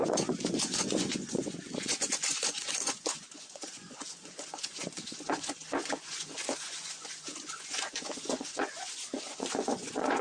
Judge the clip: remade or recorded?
remade